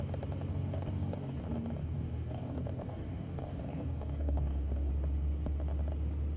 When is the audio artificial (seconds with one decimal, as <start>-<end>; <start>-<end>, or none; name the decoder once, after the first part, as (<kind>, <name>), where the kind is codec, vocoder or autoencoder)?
0.5-1.4 (codec, DAC); 1.8-4.9